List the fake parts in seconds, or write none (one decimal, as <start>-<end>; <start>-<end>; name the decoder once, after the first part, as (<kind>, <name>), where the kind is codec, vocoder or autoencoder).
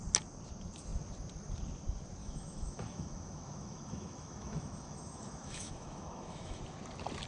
2.2-6.6 (autoencoder, DAC-VAE)